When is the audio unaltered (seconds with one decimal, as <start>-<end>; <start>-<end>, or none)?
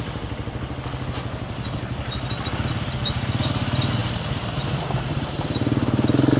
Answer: 0.0-6.4